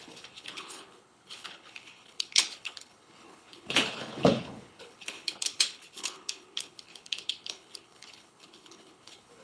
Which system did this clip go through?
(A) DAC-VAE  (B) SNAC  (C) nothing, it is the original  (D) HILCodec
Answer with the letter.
D